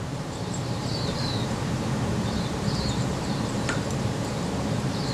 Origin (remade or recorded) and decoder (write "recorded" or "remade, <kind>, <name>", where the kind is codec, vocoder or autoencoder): remade, vocoder, BigVGAN v2